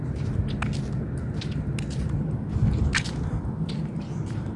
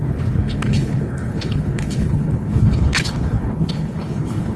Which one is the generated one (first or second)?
second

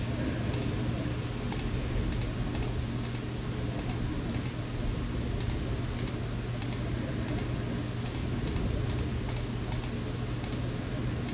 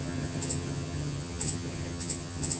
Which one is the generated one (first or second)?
second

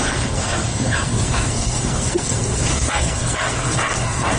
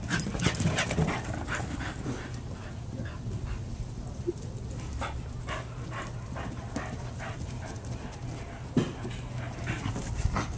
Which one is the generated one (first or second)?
first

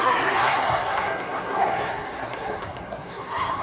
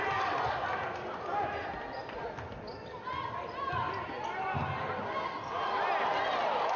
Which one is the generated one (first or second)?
first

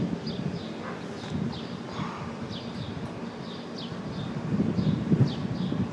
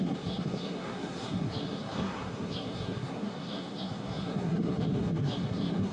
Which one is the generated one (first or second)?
second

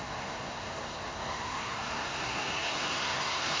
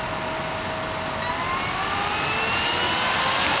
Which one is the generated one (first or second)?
first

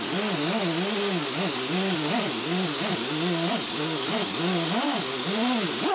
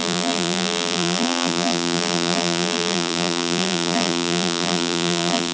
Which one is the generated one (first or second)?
second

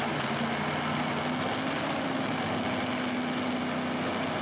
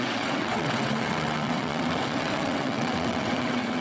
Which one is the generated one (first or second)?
second